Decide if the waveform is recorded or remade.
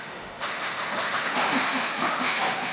remade